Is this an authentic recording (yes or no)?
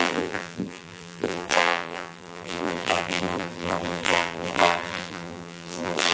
no